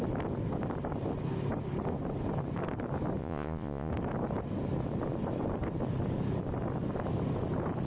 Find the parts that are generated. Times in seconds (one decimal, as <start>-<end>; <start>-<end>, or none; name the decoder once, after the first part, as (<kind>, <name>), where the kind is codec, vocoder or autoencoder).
3.2-3.9 (vocoder, Vocos)